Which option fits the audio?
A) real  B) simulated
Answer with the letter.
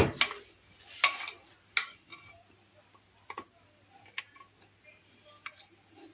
A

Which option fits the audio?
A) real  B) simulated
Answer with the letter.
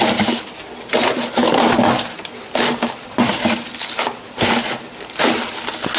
A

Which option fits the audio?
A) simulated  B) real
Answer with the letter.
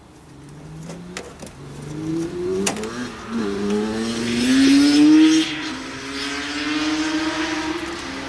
B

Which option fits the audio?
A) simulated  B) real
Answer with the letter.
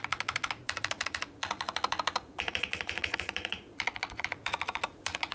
A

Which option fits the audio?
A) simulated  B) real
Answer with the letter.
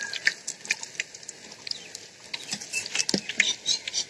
B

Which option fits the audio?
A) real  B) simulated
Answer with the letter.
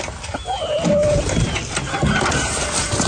A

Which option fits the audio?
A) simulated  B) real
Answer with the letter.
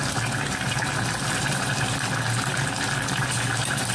B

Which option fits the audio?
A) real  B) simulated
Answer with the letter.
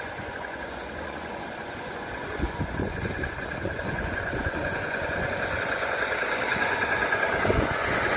B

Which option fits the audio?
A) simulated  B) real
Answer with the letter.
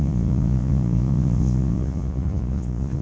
A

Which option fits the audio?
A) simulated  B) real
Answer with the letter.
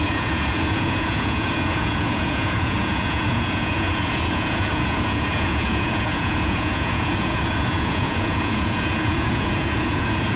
A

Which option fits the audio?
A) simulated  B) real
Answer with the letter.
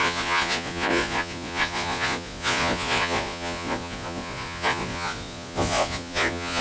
A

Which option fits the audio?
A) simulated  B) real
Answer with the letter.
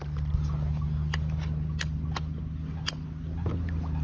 B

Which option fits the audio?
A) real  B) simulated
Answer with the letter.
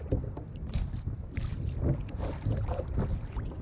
A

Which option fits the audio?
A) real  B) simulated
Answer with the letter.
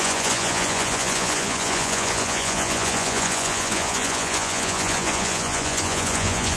B